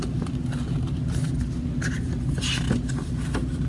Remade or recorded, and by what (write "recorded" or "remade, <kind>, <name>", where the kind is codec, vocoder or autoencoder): recorded